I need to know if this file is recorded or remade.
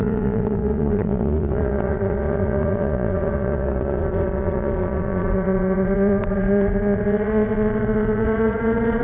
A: remade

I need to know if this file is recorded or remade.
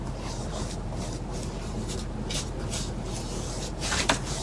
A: recorded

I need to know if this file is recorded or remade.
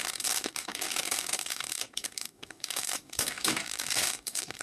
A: remade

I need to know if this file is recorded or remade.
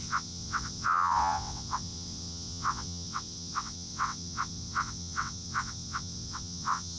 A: remade